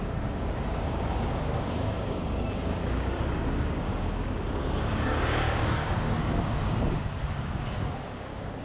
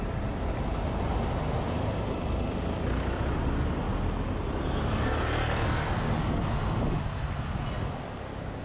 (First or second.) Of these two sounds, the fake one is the first